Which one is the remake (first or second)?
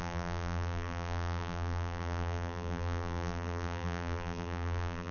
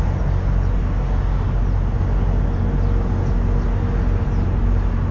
first